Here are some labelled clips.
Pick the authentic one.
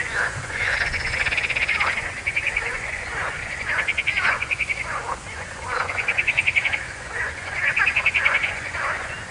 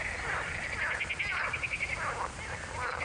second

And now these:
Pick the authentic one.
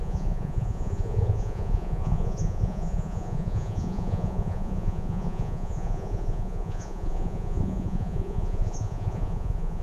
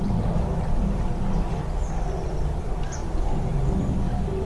second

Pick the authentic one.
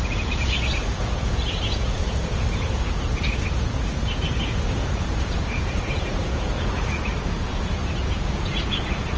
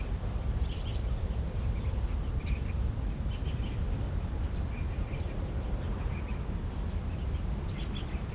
second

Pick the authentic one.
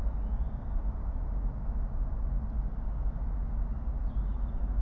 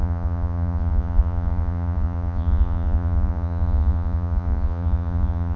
first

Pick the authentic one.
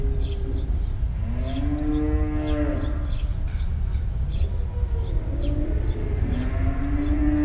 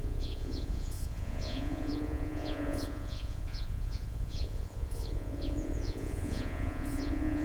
first